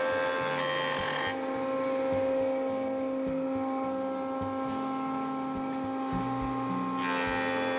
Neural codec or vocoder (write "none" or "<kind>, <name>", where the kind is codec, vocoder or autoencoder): none